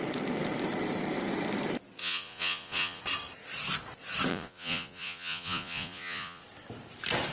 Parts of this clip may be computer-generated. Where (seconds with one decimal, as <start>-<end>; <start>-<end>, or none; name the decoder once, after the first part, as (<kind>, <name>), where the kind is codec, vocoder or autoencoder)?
2.0-3.0 (vocoder, Vocos); 4.3-6.4